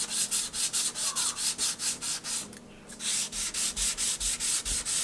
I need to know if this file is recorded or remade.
recorded